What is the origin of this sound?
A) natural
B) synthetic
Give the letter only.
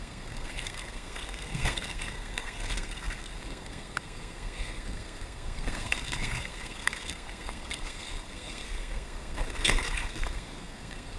B